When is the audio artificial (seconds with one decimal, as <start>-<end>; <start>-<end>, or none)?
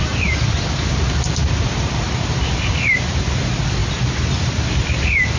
none